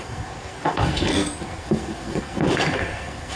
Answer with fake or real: fake